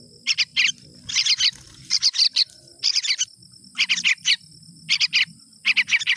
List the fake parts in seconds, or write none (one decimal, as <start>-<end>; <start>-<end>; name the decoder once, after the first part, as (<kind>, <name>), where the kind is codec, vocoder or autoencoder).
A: none